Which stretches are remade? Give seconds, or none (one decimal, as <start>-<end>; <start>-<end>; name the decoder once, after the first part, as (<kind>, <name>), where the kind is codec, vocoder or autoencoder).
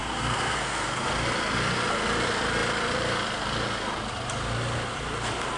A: 0.0-1.0 (codec, SNAC)